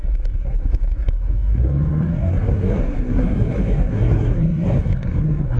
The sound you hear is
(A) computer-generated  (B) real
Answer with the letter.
A